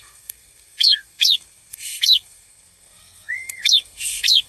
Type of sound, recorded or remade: remade